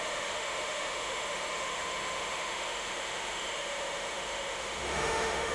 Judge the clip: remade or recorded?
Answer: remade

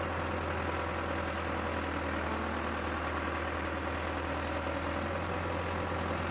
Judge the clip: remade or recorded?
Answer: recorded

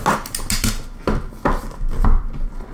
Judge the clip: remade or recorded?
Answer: recorded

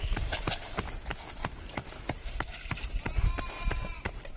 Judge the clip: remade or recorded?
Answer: recorded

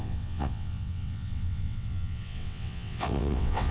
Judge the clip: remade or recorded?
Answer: remade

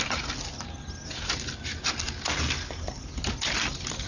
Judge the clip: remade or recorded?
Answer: recorded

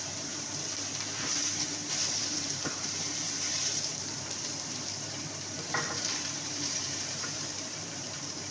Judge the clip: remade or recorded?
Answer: remade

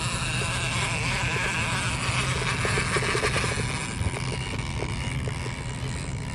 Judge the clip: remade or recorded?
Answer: recorded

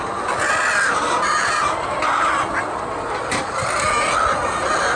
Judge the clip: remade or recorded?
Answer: recorded